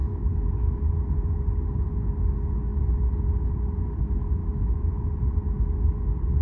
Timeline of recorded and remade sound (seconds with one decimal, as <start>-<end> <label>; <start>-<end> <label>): 0.0-0.8 remade; 0.8-4.4 recorded; 4.4-5.0 remade; 5.0-6.4 recorded